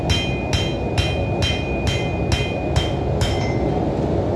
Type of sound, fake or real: real